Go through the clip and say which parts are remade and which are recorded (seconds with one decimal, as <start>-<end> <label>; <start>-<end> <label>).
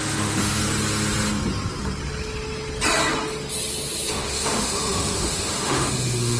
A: 0.0-0.6 remade; 0.6-4.1 recorded; 4.1-6.4 remade